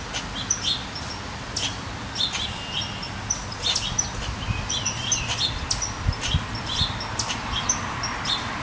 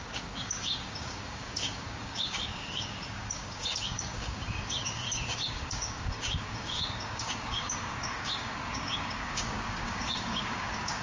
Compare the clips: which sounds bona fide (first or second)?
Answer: first